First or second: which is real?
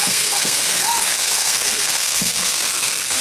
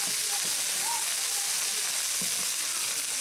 second